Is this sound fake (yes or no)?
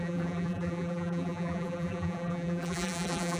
yes